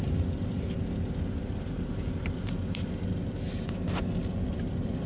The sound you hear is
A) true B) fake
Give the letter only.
A